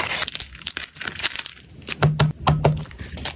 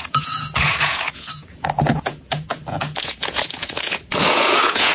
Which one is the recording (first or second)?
first